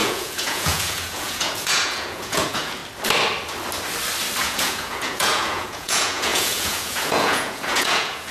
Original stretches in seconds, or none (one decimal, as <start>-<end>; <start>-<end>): 2.8-4.4